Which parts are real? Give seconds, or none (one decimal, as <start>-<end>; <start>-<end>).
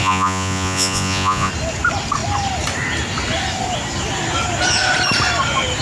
1.5-5.8